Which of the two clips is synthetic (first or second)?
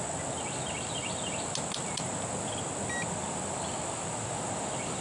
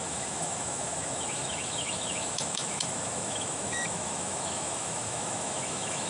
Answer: second